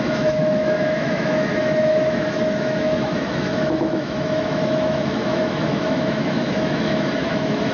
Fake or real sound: fake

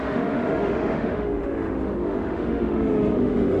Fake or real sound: fake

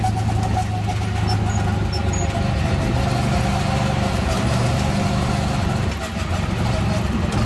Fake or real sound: real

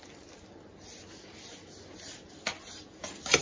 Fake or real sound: real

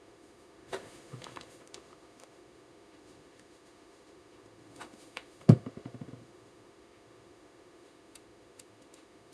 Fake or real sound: fake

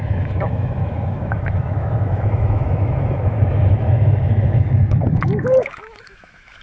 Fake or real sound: fake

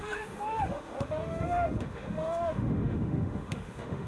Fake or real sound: fake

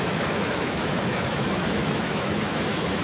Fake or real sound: fake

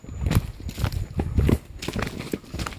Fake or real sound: real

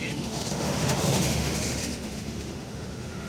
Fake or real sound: fake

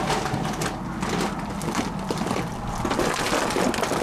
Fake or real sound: real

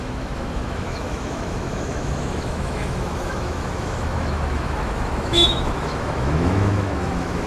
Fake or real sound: fake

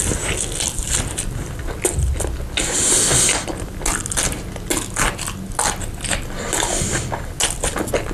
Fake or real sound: real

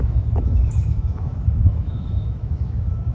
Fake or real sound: fake